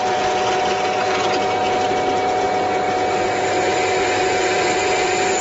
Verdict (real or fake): real